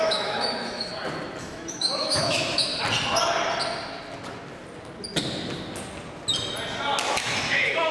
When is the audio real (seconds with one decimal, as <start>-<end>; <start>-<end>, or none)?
0.9-1.4; 2.7-7.1